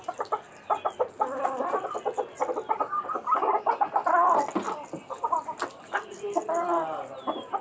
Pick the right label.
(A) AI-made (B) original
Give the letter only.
B